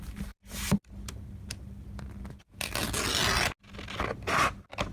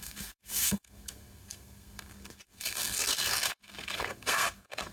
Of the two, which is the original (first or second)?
first